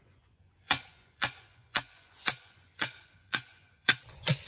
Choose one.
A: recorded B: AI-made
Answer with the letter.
B